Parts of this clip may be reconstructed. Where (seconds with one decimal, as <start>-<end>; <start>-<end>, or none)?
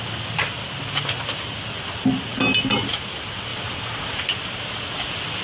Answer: none